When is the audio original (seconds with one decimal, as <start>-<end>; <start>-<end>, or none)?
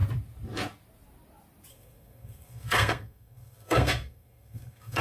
0.0-1.7